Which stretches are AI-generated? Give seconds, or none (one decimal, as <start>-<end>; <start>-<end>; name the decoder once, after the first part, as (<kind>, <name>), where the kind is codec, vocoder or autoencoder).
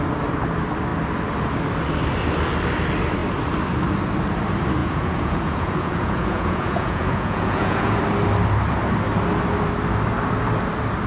4.8-8.0 (vocoder, Vocos)